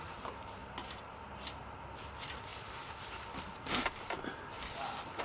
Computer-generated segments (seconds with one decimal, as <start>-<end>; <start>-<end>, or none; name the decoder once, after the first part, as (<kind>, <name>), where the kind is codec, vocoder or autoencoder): 0.6-1.3 (vocoder, BigVGAN v2); 2.5-5.2